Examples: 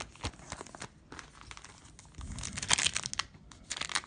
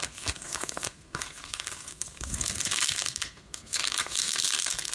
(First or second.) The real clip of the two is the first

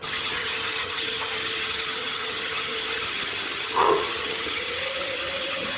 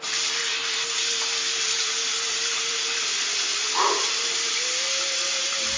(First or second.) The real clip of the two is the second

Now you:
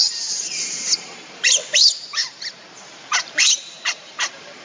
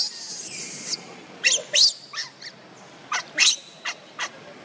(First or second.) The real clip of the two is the second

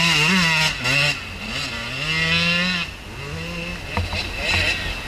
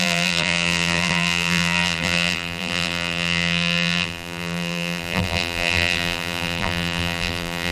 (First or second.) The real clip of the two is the first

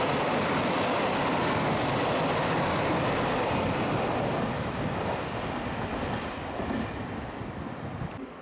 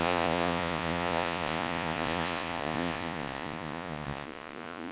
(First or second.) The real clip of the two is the first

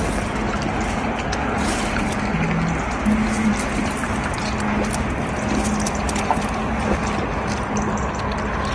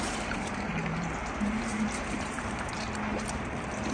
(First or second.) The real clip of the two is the first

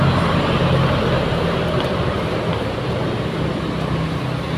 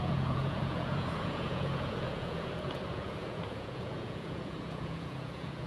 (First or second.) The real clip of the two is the first